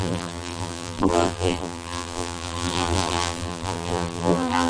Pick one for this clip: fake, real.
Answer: fake